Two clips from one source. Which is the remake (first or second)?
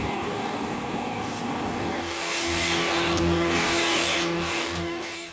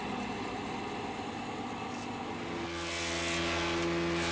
first